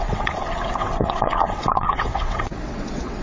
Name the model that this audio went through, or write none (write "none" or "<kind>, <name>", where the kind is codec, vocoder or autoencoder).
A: vocoder, WaveNeXt